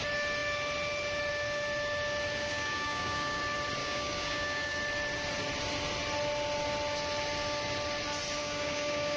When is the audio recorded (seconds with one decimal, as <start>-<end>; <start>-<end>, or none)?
0.0-2.5; 3.4-3.8; 4.8-8.4